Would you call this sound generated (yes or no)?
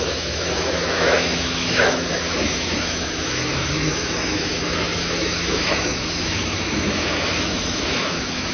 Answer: yes